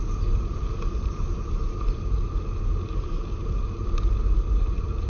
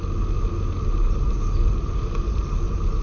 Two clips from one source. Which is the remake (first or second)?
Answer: first